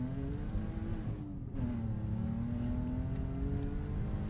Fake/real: real